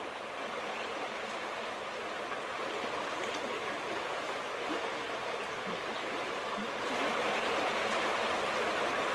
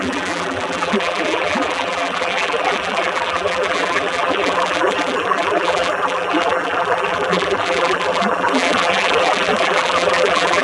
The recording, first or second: first